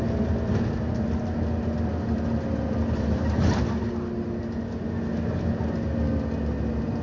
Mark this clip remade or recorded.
recorded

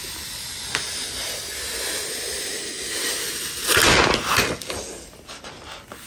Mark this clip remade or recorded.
recorded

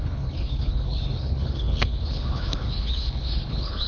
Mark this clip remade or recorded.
remade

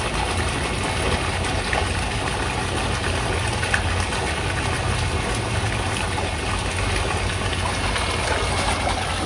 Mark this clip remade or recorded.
recorded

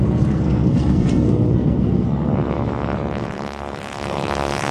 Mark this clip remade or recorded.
remade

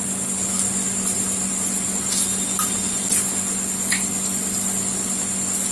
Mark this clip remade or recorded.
recorded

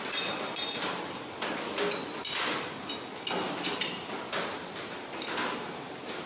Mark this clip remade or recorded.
recorded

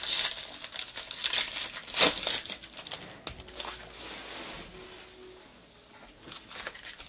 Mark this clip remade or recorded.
recorded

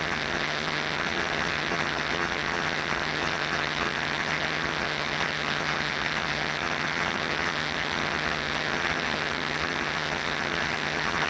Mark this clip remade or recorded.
remade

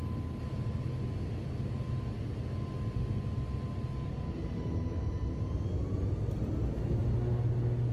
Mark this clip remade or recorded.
recorded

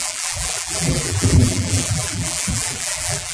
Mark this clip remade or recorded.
remade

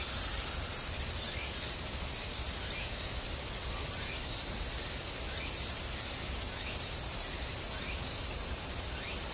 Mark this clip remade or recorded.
remade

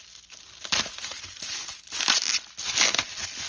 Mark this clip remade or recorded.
recorded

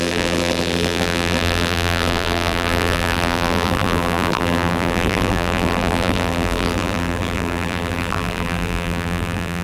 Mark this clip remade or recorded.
remade